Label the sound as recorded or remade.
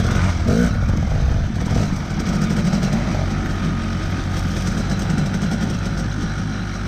recorded